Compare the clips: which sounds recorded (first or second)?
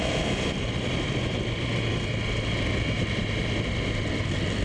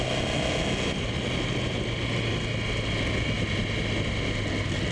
second